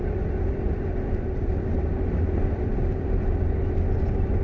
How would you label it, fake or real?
fake